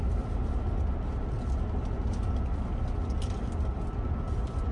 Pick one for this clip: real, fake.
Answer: real